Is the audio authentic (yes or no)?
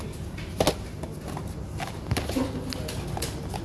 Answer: yes